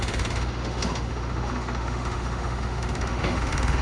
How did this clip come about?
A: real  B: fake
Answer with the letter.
B